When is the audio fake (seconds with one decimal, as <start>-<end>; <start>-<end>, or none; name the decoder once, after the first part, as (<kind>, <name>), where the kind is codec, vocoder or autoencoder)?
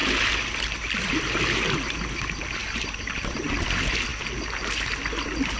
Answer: 2.6-3.4 (vocoder, BigVGAN v2)